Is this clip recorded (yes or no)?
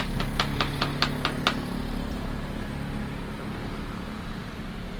yes